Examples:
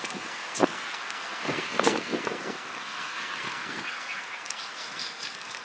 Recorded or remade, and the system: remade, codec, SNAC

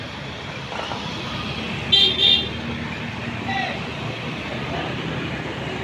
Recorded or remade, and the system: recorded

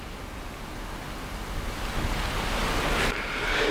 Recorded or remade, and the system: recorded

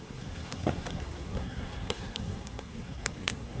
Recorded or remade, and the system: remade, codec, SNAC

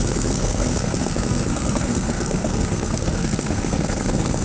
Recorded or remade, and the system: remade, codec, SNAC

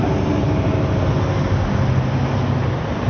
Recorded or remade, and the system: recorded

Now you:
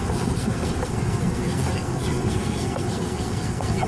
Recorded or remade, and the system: remade, codec, SNAC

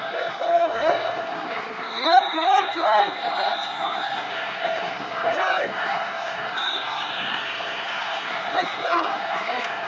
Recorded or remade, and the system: remade, codec, SNAC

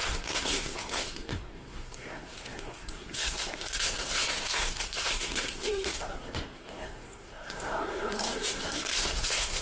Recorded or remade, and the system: remade, codec, SNAC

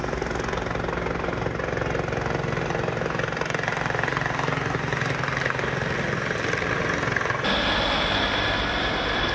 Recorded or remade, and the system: recorded